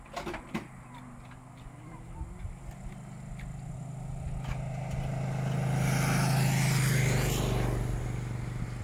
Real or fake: real